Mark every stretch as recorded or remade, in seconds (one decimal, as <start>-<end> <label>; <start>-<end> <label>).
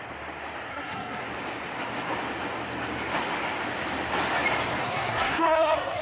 0.0-0.7 recorded; 0.7-1.2 remade; 1.2-4.8 recorded; 4.8-6.0 remade